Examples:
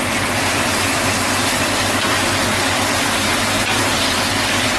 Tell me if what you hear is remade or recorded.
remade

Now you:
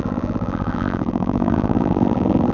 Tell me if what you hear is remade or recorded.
remade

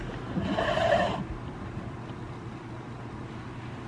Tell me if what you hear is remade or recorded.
recorded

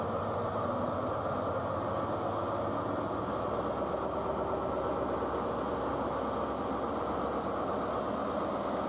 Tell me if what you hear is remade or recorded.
recorded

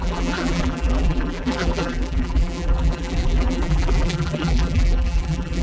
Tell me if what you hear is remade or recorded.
remade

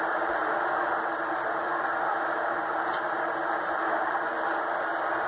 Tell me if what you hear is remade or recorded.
recorded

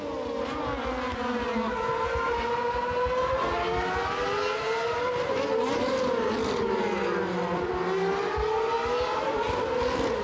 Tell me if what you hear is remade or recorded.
recorded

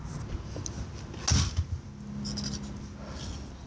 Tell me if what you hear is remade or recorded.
recorded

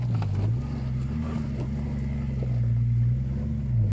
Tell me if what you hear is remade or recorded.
recorded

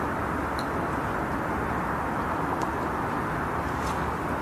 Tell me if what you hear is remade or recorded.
recorded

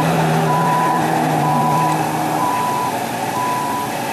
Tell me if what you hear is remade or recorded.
remade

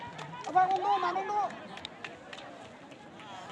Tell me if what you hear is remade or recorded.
recorded